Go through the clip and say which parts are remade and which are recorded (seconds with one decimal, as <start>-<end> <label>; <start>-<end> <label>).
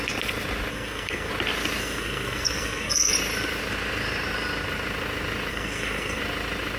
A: 0.0-0.7 recorded; 0.7-1.3 remade; 1.3-1.8 recorded; 1.8-3.1 remade; 3.1-5.5 recorded; 5.5-6.2 remade; 6.2-6.8 recorded